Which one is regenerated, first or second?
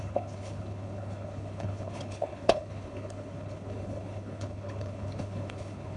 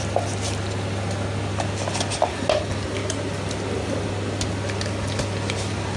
first